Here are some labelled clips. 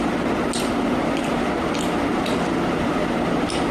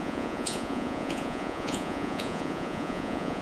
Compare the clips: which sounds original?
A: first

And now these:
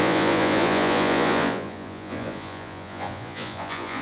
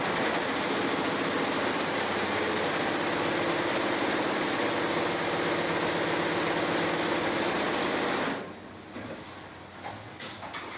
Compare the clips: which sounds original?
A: second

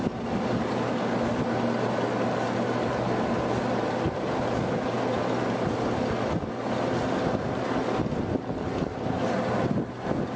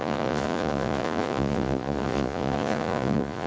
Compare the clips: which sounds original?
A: first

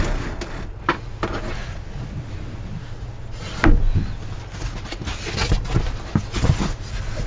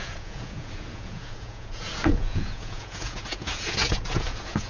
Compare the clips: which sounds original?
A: first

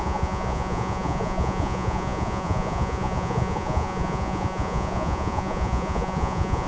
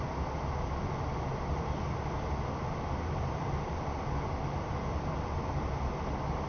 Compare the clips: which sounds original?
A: second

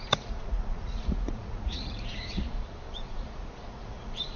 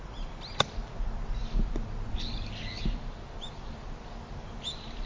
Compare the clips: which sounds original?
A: second